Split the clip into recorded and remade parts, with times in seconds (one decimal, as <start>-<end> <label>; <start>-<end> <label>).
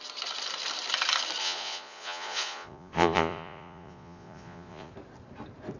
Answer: 0.0-1.4 recorded; 1.4-4.9 remade; 4.9-5.8 recorded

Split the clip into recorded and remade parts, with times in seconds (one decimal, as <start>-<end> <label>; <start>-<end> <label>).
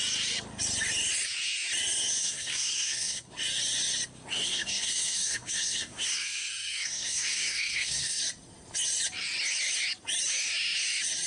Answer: 0.0-2.2 recorded; 2.2-3.3 remade; 3.3-4.3 recorded; 4.3-8.2 remade; 8.2-11.3 recorded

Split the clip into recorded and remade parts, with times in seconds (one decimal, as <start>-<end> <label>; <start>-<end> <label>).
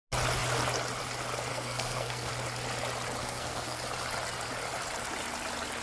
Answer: 0.0-1.5 recorded; 1.5-2.3 remade; 2.3-3.2 recorded; 3.2-3.8 remade; 3.8-5.8 recorded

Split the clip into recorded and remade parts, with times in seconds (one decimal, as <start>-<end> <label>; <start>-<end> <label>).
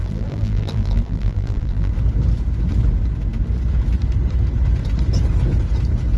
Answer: 0.0-1.9 remade; 1.9-6.2 recorded